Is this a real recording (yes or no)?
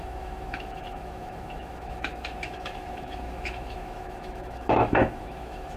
no